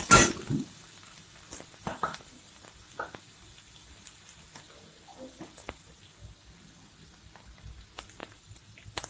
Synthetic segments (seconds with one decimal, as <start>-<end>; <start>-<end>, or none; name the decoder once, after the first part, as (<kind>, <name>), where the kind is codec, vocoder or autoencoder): 1.9-2.6 (vocoder, BigVGAN v2); 5.1-6.0; 8.2-9.1